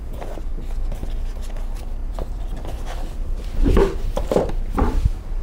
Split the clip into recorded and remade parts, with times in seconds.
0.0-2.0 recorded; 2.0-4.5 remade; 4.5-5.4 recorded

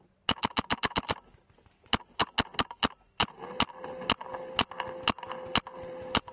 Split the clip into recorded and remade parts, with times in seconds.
0.0-6.3 recorded

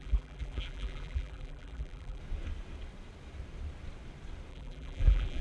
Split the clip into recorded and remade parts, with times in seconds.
0.0-2.2 remade; 2.2-4.5 recorded; 4.5-5.4 remade

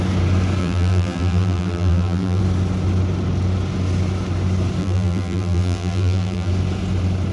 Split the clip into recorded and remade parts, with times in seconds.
0.0-0.6 recorded; 0.6-2.4 remade; 2.4-4.8 recorded; 4.8-6.5 remade; 6.5-7.3 recorded

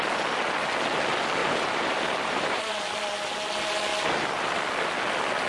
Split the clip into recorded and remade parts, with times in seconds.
0.0-1.4 recorded; 1.4-2.7 remade; 2.7-5.5 recorded